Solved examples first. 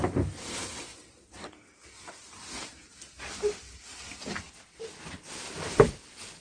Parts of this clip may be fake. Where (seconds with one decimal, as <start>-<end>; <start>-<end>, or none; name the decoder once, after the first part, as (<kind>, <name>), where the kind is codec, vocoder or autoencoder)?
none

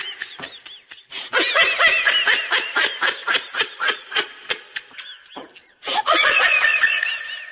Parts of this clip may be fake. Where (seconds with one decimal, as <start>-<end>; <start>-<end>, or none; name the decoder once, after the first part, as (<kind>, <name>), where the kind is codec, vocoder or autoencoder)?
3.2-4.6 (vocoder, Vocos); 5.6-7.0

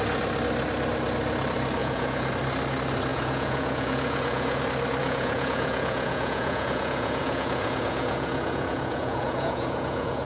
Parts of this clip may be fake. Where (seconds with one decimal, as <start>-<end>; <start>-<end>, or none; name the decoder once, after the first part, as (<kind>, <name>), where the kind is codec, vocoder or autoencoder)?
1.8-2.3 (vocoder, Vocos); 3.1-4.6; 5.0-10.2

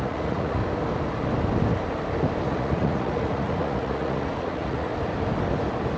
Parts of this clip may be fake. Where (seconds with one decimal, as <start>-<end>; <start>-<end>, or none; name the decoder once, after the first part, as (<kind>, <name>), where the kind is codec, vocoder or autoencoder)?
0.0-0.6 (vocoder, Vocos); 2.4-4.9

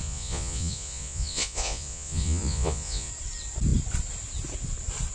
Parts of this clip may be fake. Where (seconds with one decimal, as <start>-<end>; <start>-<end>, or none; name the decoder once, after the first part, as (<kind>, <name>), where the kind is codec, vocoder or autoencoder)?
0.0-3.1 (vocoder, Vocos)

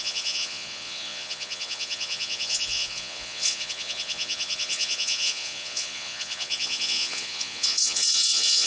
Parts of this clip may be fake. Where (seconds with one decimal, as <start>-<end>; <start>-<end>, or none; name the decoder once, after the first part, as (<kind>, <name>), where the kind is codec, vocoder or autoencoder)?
0.0-8.7 (vocoder, Vocos)